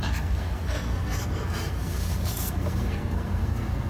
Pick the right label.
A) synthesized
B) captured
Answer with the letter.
A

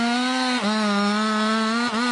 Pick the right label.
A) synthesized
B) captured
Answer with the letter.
B